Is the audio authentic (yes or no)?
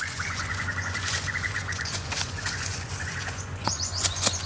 no